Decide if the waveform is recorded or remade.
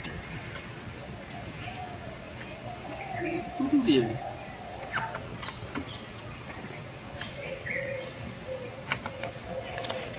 remade